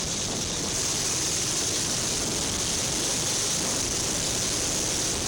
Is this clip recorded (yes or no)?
yes